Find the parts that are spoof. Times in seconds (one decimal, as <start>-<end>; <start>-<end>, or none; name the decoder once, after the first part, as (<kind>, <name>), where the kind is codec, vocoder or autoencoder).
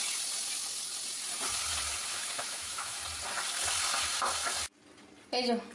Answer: 2.1-3.0 (autoencoder, DAC-VAE)